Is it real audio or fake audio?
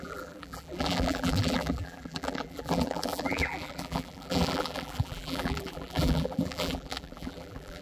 fake